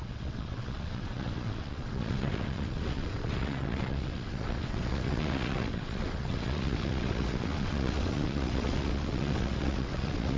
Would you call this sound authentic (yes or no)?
no